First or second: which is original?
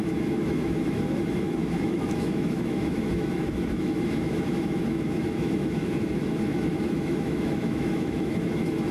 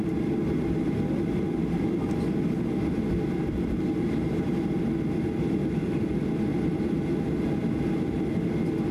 second